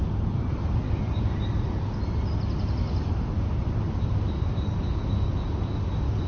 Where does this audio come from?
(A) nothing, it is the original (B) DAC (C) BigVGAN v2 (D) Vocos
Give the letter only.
A